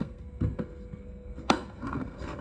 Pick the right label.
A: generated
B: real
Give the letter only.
A